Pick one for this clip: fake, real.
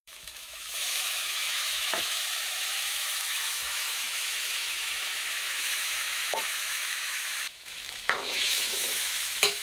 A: fake